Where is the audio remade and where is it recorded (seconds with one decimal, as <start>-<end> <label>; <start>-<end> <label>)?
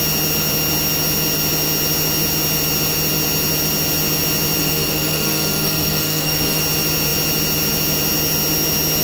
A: 0.0-4.6 recorded; 4.6-6.6 remade; 6.6-9.0 recorded